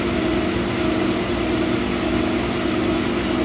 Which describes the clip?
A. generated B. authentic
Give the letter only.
B